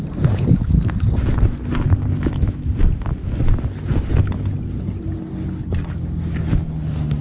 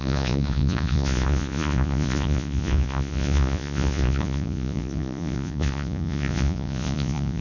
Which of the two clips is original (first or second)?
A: first